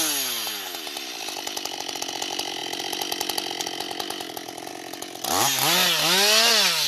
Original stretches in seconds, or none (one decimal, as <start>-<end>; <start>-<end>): 0.0-6.9